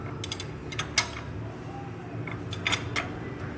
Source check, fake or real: real